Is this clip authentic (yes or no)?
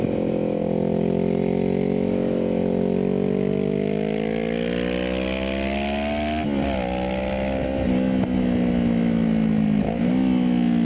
yes